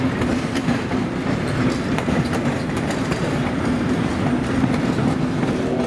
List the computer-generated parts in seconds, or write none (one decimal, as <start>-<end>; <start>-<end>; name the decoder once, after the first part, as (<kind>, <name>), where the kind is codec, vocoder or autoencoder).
0.6-4.1 (vocoder, BigVGAN v2)